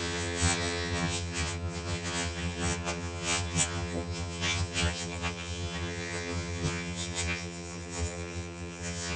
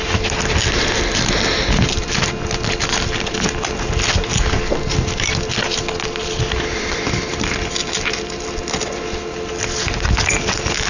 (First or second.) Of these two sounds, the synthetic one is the first